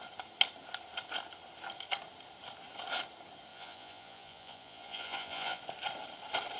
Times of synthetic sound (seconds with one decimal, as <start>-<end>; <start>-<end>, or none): 3.5-5.6